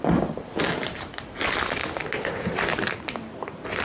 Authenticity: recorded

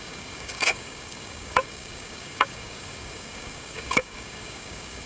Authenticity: remade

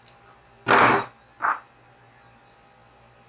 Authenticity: recorded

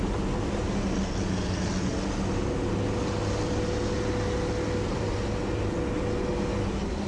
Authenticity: recorded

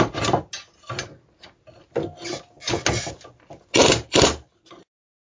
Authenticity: recorded